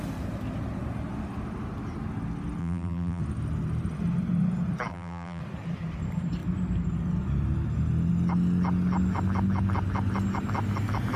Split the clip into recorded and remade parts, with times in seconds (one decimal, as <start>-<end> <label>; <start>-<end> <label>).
0.0-2.6 recorded; 2.6-3.2 remade; 3.2-4.9 recorded; 4.9-5.4 remade; 5.4-11.2 recorded